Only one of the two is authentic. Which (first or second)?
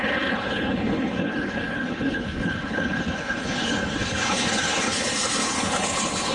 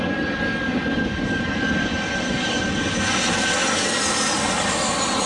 second